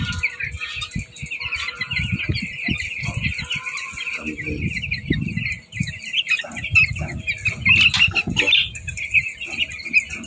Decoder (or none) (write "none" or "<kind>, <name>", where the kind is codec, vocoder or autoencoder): none